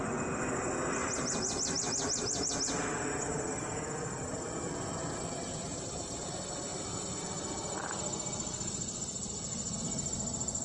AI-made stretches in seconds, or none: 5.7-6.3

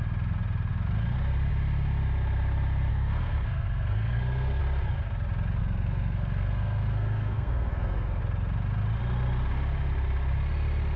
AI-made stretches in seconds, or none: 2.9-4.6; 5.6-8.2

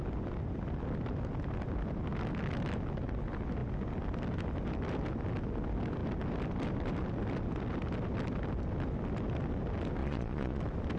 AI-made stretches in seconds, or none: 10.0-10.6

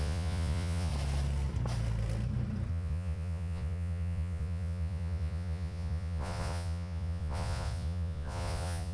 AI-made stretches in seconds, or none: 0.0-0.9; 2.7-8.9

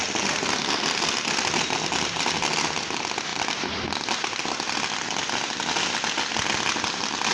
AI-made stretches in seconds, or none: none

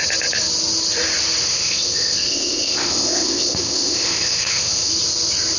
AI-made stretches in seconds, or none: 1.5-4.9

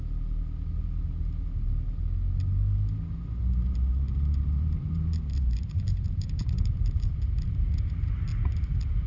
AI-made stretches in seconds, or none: 3.4-7.1

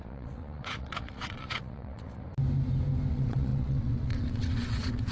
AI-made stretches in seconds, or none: 0.0-2.2; 3.1-5.1